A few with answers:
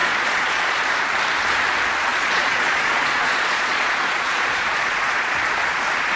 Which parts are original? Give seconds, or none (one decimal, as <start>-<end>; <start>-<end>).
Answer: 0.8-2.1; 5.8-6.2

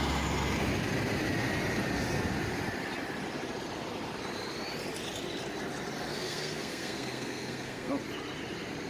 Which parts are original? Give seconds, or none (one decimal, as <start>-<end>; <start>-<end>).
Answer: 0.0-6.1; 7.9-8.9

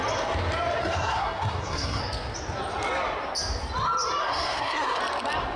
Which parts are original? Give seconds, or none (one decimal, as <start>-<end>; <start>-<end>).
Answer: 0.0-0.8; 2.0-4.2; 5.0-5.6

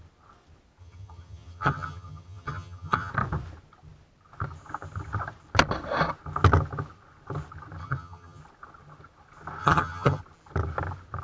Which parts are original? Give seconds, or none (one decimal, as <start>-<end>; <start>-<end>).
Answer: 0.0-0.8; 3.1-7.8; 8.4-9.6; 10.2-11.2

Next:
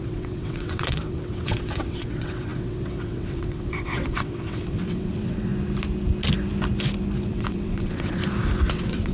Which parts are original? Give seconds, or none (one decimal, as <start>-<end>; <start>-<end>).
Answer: 5.5-7.3; 8.2-8.7